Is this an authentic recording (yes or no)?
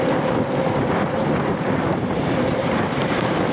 no